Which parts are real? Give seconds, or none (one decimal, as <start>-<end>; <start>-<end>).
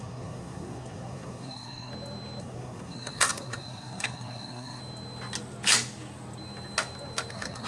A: 1.9-2.4; 4.8-7.3